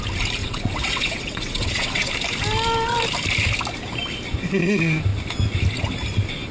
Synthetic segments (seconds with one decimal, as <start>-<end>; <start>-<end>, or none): 0.4-2.1